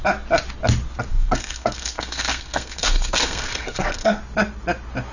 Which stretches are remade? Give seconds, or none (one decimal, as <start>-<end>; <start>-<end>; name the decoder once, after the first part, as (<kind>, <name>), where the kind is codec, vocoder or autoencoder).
1.1-4.2 (codec, SNAC)